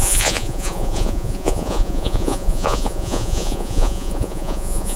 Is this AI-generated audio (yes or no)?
yes